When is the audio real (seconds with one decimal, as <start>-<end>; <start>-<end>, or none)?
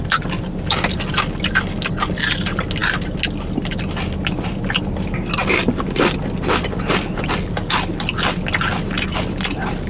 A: 0.0-9.9